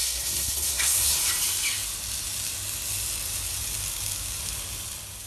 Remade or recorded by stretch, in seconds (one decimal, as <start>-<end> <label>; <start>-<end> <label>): 0.0-1.2 remade; 1.2-5.3 recorded